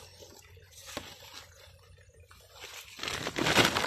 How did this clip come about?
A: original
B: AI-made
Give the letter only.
A